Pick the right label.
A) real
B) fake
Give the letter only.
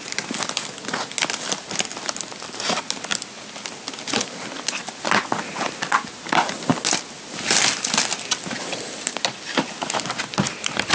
A